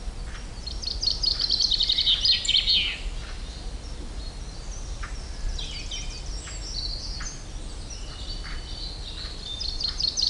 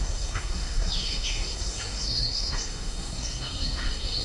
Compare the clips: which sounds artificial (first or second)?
second